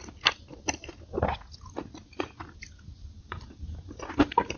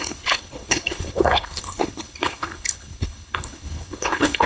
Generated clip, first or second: second